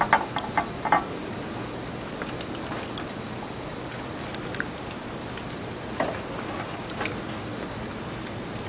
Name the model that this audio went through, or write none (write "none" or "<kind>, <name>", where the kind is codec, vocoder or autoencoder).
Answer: none